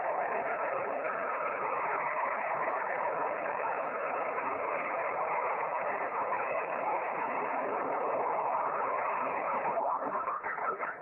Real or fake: fake